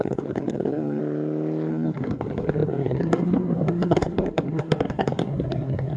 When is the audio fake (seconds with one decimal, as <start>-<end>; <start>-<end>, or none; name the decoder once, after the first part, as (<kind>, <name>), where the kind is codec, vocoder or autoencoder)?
0.0-1.0 (codec, SNAC); 1.7-6.0